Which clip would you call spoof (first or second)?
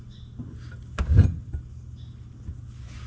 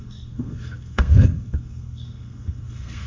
second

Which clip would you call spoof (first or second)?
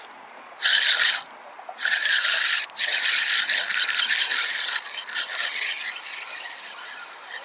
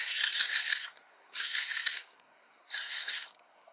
second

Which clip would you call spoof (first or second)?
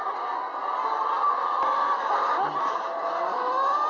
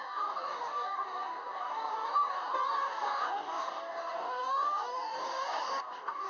second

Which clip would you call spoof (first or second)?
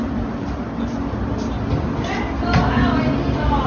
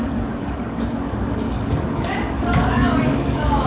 second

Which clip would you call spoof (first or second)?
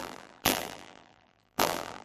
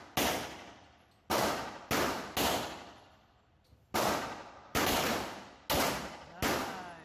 first